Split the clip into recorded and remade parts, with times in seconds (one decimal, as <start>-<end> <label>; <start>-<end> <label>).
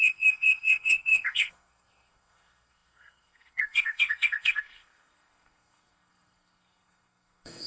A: 0.0-7.7 remade